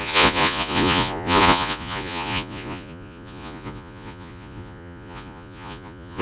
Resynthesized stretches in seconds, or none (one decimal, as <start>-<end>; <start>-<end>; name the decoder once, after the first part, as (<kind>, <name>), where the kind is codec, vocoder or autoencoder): 0.0-6.2 (vocoder, Vocos)